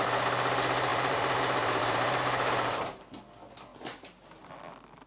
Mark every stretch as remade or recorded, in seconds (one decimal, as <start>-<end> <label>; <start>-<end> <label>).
0.0-0.9 recorded; 0.9-3.0 remade; 3.0-5.1 recorded